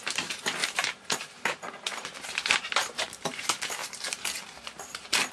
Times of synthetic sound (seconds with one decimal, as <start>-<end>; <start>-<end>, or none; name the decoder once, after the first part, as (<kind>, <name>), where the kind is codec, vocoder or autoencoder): 0.0-3.8 (vocoder, BigVGAN v2); 4.6-5.3